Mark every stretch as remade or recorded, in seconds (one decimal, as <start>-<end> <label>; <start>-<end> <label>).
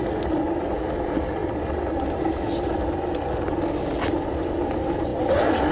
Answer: 0.0-5.7 recorded